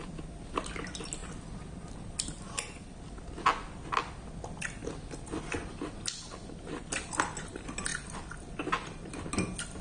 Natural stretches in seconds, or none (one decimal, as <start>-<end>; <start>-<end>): 0.0-9.8